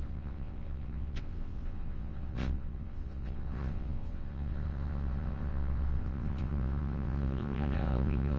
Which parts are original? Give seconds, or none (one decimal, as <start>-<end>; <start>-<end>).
none